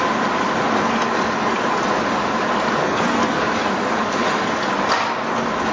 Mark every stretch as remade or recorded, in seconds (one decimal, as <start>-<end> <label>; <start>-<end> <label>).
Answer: 0.0-2.8 recorded; 2.8-3.4 remade; 3.4-5.7 recorded